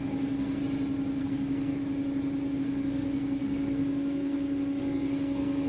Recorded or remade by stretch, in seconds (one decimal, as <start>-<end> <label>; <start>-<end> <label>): 0.0-0.6 remade; 0.6-1.2 recorded; 1.2-1.8 remade; 1.8-2.6 recorded; 2.6-5.7 remade